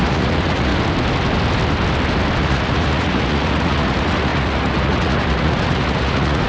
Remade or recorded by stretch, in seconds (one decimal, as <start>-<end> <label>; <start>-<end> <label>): 0.0-0.7 remade; 0.7-2.4 recorded; 2.4-6.5 remade